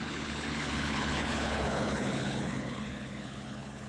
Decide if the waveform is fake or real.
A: fake